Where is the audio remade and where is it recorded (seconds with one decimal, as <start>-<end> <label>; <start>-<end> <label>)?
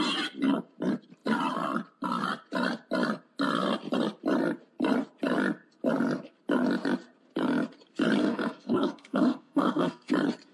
0.0-8.2 recorded; 8.2-10.1 remade; 10.1-10.5 recorded